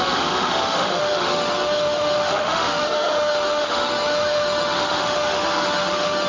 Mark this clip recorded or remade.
remade